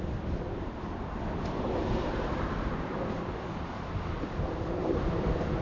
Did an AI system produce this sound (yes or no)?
yes